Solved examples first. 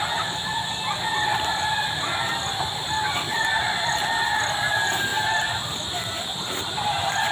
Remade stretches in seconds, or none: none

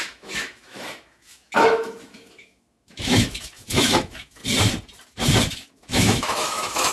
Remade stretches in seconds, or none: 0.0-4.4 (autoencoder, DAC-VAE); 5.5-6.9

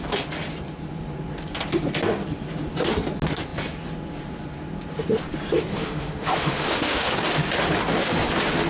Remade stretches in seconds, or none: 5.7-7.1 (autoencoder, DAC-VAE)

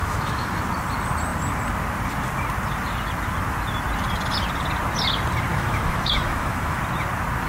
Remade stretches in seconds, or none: 0.0-0.6 (autoencoder, DAC-VAE); 5.5-6.8

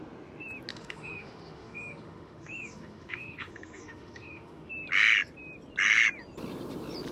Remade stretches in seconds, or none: 0.7-4.7 (autoencoder, DAC-VAE)

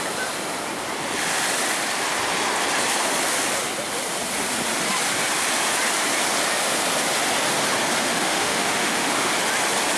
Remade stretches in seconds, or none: 8.0-9.3 (autoencoder, DAC-VAE)